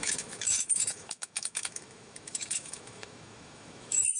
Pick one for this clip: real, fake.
fake